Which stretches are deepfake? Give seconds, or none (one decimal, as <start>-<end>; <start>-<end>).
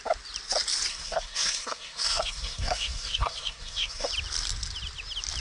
0.9-4.1